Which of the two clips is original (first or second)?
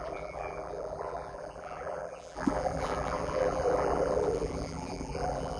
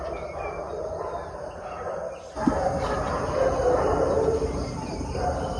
second